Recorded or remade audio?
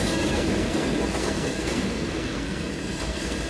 remade